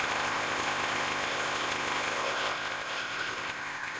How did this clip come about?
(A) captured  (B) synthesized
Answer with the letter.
B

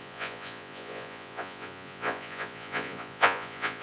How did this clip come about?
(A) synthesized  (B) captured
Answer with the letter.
A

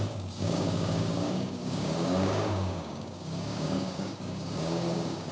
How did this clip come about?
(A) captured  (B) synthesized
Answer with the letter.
B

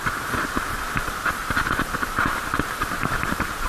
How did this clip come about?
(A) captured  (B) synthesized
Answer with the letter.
B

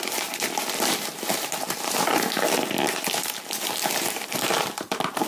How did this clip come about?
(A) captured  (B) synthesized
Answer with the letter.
A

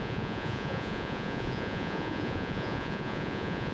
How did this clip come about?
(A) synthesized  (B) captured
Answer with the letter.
A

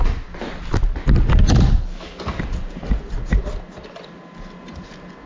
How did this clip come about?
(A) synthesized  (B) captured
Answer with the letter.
B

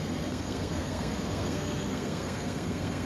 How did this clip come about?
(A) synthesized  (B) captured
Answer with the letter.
A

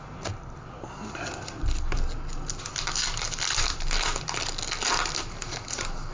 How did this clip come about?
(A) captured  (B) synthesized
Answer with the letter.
A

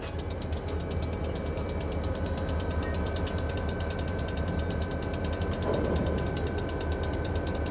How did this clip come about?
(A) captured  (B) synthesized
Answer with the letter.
A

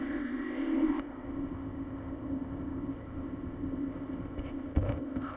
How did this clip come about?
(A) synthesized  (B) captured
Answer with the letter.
A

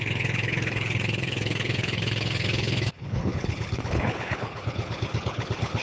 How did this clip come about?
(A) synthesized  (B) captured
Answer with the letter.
A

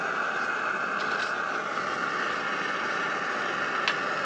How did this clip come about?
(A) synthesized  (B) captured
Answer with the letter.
B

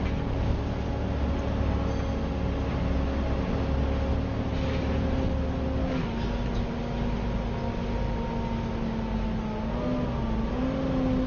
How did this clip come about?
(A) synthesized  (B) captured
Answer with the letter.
B